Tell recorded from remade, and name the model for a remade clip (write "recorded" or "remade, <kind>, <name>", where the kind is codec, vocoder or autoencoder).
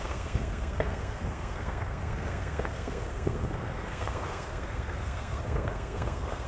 remade, codec, SNAC